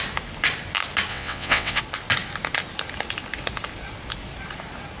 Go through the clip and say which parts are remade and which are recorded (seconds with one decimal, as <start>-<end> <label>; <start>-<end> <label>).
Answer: 0.0-1.1 recorded; 1.1-1.8 remade; 1.8-5.0 recorded